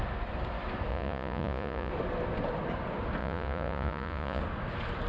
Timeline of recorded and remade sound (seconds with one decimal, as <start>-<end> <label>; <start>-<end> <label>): 0.0-0.9 recorded; 0.9-1.9 remade; 1.9-3.2 recorded; 3.2-4.4 remade; 4.4-5.1 recorded